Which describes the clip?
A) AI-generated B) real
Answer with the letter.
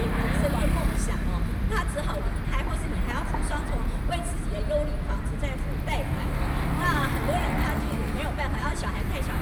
B